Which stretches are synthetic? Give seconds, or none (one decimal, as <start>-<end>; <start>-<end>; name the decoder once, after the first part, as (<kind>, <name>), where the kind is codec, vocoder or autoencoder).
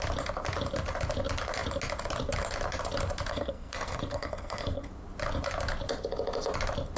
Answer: 3.3-4.9 (codec, SNAC)